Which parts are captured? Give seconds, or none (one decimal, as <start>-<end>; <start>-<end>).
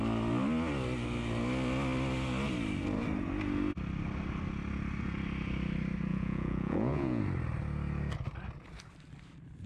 0.0-6.1; 7.2-9.7